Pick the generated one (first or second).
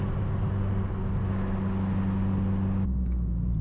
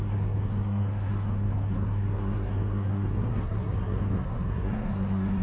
second